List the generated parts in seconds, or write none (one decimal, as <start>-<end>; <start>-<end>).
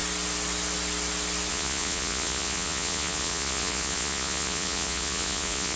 1.5-5.8